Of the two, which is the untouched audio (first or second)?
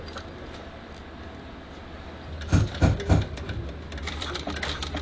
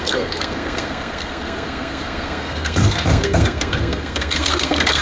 first